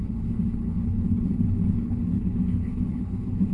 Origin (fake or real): fake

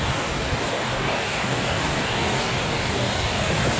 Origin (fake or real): fake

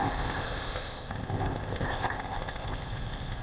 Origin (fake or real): fake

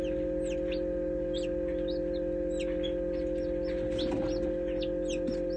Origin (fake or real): real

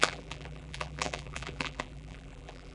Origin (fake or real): fake